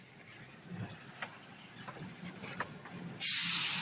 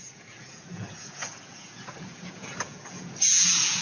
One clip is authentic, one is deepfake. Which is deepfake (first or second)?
second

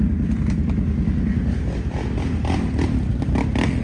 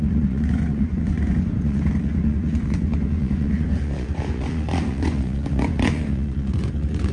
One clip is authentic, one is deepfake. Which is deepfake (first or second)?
second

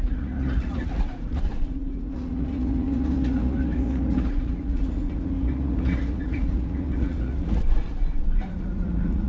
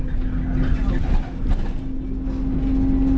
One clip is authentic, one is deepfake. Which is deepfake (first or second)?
first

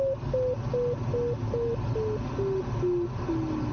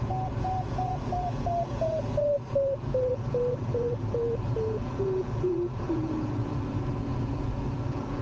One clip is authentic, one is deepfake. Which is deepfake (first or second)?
second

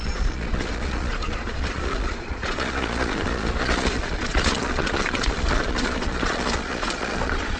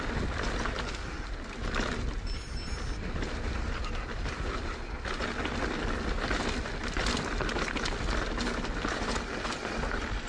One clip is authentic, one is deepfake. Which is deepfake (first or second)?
first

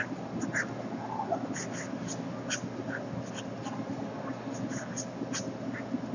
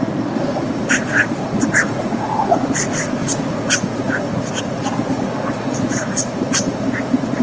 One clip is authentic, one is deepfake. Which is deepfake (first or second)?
second